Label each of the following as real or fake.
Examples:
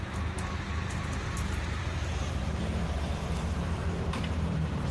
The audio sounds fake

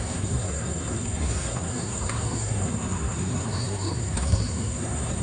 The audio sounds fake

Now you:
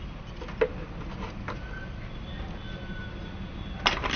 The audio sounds real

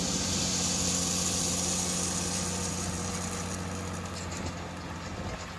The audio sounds real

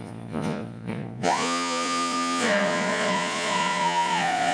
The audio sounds fake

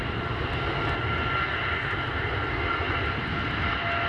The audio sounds real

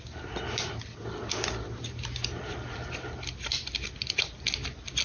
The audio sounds real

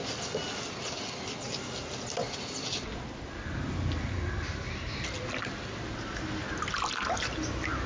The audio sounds real